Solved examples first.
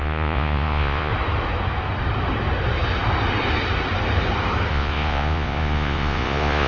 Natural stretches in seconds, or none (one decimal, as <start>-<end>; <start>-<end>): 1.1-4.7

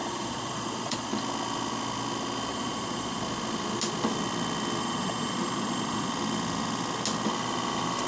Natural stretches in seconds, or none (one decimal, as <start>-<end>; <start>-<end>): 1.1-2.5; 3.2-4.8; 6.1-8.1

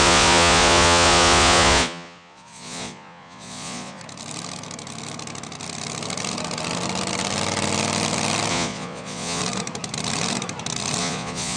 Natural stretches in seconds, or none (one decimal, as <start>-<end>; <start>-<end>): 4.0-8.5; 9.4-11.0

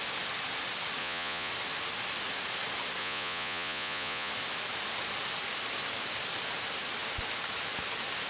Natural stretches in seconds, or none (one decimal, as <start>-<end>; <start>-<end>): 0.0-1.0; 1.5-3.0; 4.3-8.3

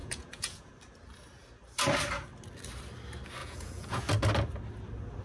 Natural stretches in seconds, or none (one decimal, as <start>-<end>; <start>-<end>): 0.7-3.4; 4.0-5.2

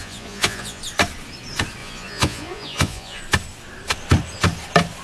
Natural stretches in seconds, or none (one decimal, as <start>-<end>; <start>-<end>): 0.8-1.8; 3.2-5.0